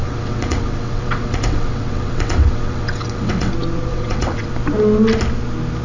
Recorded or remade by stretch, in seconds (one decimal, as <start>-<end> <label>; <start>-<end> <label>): 0.0-3.5 remade; 3.5-3.9 recorded; 3.9-4.5 remade; 4.5-5.8 recorded